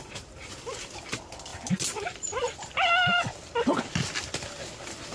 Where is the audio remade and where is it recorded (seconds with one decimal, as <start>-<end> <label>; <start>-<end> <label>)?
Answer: 0.0-5.1 recorded